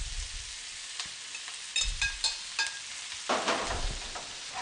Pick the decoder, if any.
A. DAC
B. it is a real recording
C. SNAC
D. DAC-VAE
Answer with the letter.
B